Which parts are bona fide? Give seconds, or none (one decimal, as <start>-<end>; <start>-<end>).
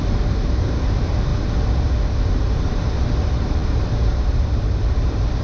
1.3-2.3